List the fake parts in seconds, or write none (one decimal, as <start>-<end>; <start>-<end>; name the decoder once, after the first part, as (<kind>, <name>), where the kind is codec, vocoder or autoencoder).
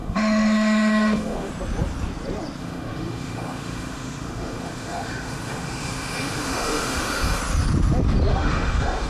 0.0-1.5 (autoencoder, DAC-VAE); 2.6-7.4; 8.3-9.1